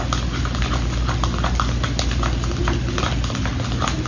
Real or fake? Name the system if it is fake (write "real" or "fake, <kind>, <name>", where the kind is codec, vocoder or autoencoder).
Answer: real